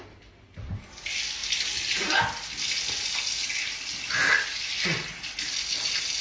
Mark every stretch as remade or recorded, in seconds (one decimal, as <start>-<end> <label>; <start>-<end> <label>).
0.0-6.2 recorded